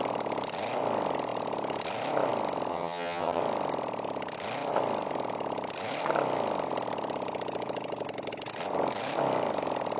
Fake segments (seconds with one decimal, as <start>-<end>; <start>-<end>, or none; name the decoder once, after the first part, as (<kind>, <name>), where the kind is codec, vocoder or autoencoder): 2.7-3.4 (vocoder, HiFi-GAN)